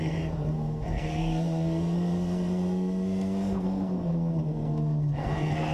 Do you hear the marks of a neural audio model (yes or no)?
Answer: yes